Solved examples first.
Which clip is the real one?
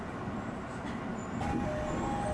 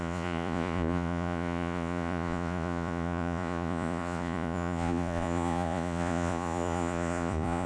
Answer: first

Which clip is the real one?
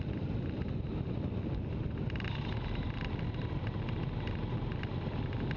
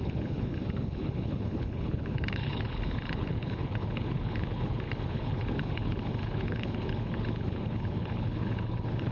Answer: first